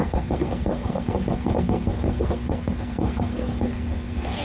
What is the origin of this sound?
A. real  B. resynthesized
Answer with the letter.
B